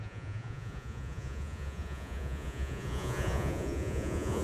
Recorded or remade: remade